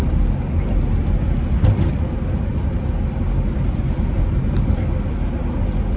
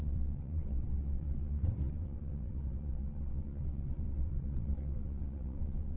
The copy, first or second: second